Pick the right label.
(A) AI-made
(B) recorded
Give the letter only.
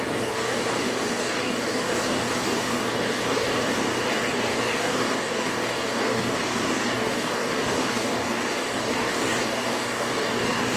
A